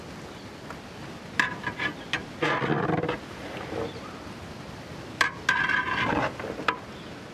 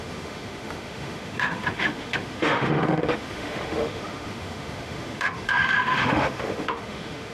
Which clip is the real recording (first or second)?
first